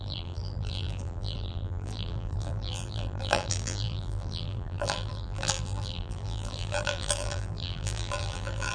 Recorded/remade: remade